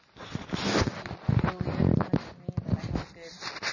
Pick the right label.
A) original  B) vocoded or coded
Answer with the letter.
A